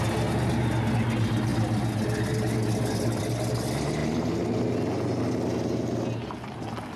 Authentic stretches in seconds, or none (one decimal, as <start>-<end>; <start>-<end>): 0.0-7.0